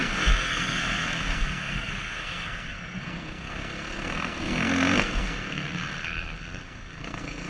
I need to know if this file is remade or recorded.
remade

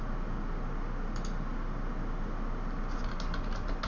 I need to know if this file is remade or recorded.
recorded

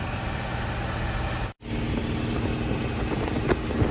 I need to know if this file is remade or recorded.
recorded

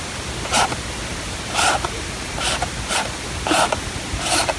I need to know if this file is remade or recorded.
recorded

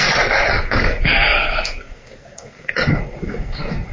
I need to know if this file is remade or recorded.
remade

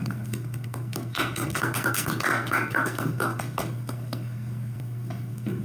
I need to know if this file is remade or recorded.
remade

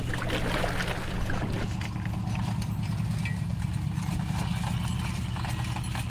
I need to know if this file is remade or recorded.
recorded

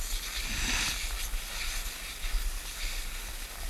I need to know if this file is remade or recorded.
recorded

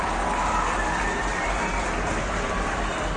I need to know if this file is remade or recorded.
recorded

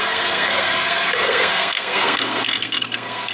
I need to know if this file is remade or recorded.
remade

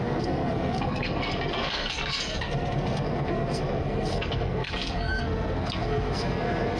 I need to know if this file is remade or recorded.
remade